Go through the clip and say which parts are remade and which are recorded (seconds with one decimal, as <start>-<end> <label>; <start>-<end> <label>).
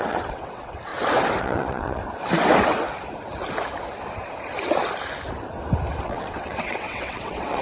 0.0-0.9 remade; 0.9-1.4 recorded; 1.4-2.0 remade; 2.0-6.0 recorded; 6.0-7.6 remade